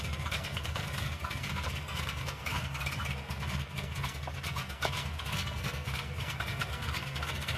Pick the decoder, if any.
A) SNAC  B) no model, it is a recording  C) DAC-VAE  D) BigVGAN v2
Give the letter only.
A